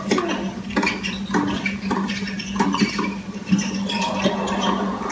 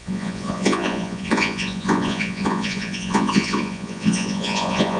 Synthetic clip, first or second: second